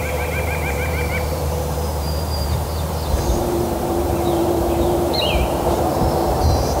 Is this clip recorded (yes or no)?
no